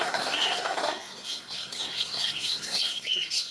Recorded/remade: remade